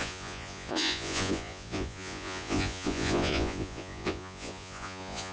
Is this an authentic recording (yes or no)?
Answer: no